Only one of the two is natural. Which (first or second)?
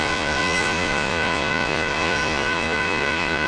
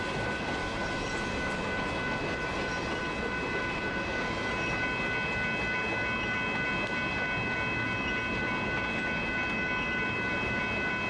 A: second